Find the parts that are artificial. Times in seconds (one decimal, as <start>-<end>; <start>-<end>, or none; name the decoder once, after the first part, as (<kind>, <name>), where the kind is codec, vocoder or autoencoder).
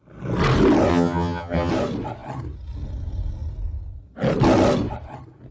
0.9-1.7 (vocoder, HiFi-GAN)